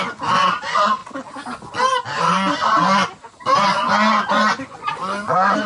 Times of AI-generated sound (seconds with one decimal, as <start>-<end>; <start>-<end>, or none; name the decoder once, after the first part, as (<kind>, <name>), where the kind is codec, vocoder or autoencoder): 0.0-1.0 (vocoder, Vocos); 4.2-5.7